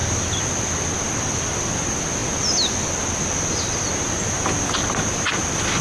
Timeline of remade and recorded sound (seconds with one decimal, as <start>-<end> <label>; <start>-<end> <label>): 0.0-5.8 recorded

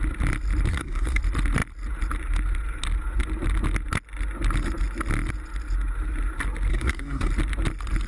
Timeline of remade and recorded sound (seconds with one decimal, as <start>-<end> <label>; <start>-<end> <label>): 0.0-0.7 recorded; 0.7-1.2 remade; 1.2-6.7 recorded; 6.7-7.3 remade; 7.3-8.1 recorded

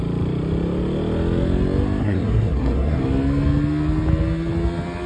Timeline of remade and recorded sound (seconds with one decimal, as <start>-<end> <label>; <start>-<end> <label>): 0.0-2.0 recorded; 2.0-3.0 remade; 3.0-5.1 recorded